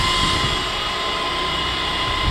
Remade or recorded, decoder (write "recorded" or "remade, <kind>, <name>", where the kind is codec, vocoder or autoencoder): recorded